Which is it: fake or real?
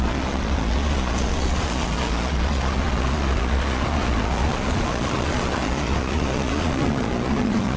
fake